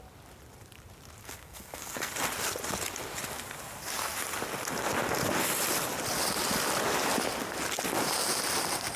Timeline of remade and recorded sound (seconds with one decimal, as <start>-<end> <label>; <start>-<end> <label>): 0.0-1.2 recorded; 1.2-2.1 remade; 2.1-9.0 recorded

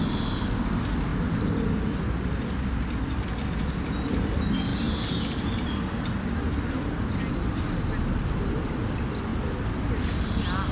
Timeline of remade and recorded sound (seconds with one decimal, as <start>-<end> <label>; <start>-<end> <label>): 0.0-10.7 recorded

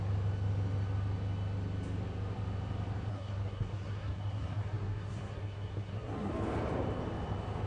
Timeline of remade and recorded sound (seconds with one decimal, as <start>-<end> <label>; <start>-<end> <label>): 0.0-3.1 recorded; 3.1-6.3 remade; 6.3-7.7 recorded

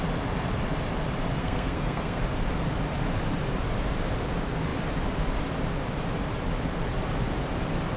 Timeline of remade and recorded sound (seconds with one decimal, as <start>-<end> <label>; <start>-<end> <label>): 0.0-1.4 recorded; 1.4-2.2 remade; 2.2-8.0 recorded

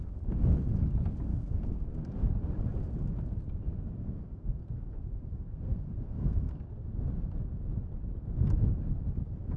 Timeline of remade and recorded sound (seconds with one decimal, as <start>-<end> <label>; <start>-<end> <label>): 0.0-1.3 recorded; 1.3-2.0 remade; 2.0-4.0 recorded; 4.0-6.6 remade; 6.6-9.6 recorded

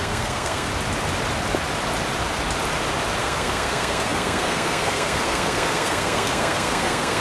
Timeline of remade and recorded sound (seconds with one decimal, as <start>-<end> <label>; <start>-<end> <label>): 0.0-0.7 remade; 0.7-3.2 recorded; 3.2-7.2 remade

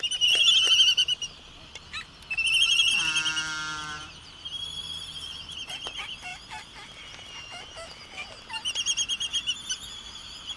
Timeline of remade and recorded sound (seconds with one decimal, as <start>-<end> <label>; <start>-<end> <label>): 0.0-10.6 recorded